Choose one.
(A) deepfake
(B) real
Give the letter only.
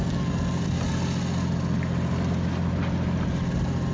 B